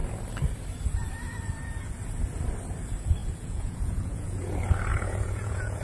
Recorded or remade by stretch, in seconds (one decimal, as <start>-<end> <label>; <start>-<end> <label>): 0.0-3.2 recorded; 3.2-4.4 remade; 4.4-4.9 recorded; 4.9-5.8 remade